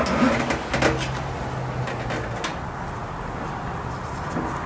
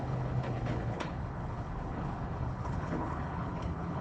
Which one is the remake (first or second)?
second